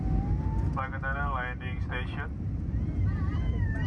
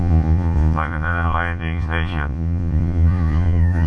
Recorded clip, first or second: first